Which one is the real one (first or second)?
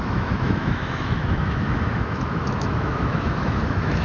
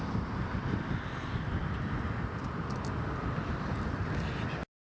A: second